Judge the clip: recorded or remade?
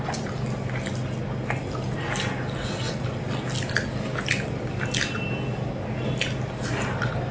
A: recorded